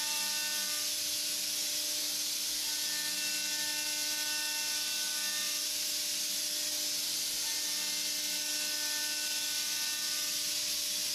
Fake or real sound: real